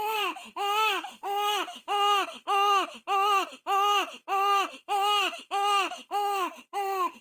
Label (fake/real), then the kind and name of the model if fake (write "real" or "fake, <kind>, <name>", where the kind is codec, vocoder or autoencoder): fake, autoencoder, DAC-VAE